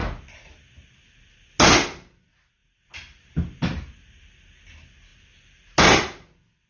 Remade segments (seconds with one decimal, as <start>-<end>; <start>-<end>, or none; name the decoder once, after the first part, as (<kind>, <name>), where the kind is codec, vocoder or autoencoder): none